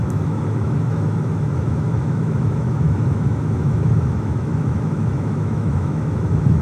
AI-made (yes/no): yes